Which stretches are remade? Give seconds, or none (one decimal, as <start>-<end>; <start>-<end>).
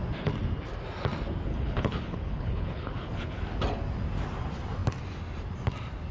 1.5-3.4